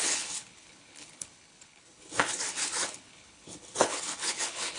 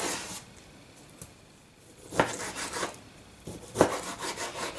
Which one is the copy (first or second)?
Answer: first